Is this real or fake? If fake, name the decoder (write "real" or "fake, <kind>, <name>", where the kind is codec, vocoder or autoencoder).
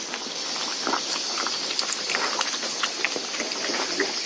fake, vocoder, BigVGAN v2